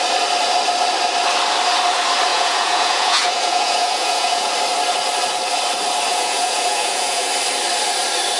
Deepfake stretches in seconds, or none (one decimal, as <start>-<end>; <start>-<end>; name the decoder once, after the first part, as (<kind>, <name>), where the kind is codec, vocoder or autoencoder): 2.3-4.5 (vocoder, Vocos); 6.1-7.3

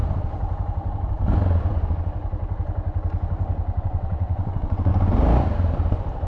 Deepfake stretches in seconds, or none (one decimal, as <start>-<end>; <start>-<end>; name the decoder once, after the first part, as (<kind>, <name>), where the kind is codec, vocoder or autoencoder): 3.8-4.9 (vocoder, WaveNeXt)

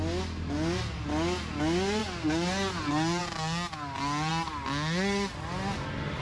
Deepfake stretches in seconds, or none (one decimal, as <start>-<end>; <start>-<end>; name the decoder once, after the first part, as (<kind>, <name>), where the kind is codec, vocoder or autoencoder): none

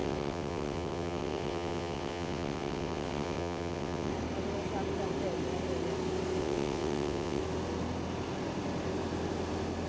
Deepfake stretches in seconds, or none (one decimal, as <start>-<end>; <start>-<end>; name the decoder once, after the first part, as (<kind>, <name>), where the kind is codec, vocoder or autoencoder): 0.0-4.1 (vocoder, WaveNeXt); 6.4-7.4

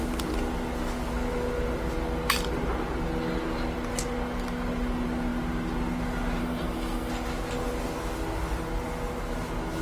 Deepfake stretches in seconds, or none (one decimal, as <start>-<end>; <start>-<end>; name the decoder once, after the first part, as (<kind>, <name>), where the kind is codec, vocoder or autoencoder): 6.4-7.1 (codec, SNAC)

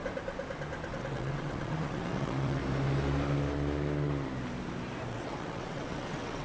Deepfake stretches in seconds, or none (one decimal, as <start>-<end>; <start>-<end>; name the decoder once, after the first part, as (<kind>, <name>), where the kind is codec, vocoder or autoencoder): 0.9-2.6 (vocoder, WaveNeXt); 5.1-6.4